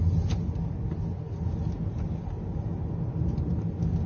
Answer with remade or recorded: recorded